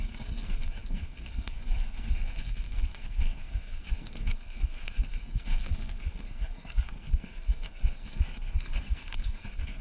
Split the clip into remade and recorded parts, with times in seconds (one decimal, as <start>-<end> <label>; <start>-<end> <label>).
0.0-9.8 remade